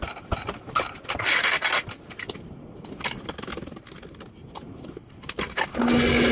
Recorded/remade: recorded